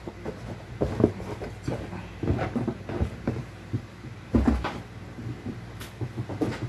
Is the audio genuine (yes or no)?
yes